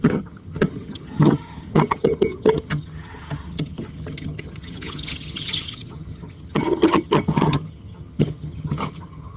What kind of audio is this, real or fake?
fake